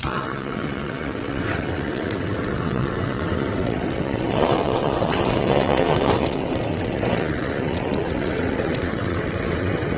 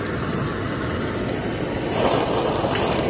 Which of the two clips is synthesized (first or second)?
first